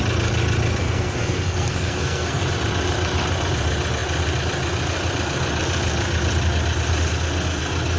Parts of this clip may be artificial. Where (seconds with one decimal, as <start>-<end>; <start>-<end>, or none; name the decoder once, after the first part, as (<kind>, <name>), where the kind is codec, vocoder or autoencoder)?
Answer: 0.8-2.4 (codec, SNAC)